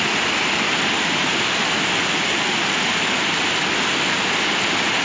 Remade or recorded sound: recorded